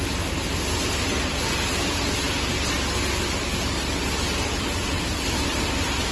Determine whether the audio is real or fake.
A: real